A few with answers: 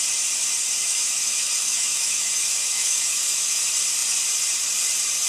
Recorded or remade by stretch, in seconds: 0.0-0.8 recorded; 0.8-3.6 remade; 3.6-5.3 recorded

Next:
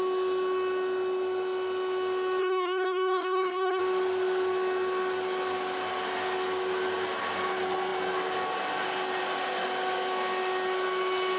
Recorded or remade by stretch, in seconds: 0.0-2.4 recorded; 2.4-3.8 remade; 3.8-11.4 recorded